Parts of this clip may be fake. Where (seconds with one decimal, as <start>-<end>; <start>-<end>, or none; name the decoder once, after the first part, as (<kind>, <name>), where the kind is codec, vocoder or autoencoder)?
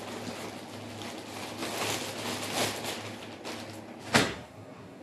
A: 4.2-5.0 (codec, SNAC)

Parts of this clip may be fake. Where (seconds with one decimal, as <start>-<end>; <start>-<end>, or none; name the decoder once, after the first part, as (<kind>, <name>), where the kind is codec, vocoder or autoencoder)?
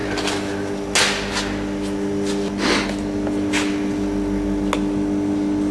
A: none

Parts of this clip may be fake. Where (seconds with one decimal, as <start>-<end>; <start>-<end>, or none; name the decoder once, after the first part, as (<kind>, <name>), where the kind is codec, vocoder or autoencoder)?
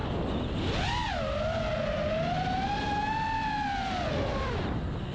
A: none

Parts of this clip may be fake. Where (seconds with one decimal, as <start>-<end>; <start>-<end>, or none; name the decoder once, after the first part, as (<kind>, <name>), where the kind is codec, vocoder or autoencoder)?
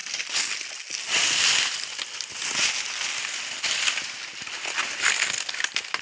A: none